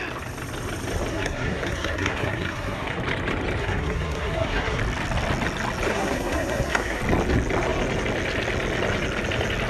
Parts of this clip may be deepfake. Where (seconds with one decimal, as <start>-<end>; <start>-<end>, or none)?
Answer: 1.1-3.0; 3.6-4.8; 5.9-7.0